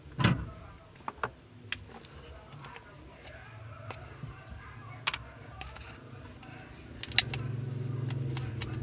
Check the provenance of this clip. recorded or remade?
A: recorded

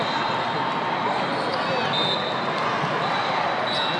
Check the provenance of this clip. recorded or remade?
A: recorded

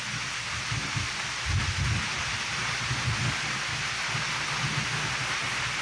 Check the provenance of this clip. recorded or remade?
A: recorded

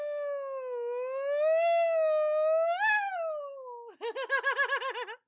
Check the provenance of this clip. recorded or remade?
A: recorded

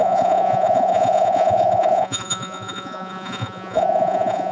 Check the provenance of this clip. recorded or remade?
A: remade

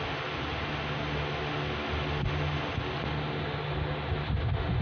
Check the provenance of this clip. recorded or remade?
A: recorded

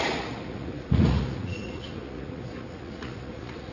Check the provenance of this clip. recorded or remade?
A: remade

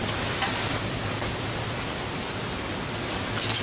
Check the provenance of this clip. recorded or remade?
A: recorded